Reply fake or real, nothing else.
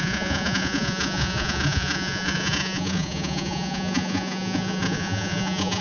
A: fake